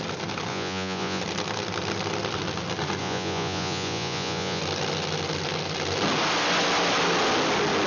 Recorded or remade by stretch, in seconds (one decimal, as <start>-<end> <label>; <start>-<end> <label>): 0.0-0.5 recorded; 0.5-1.2 remade; 1.2-3.0 recorded; 3.0-4.6 remade; 4.6-7.9 recorded